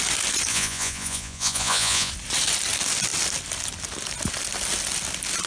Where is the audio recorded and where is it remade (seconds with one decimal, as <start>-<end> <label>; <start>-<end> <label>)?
0.0-0.5 recorded; 0.5-2.1 remade; 2.1-5.5 recorded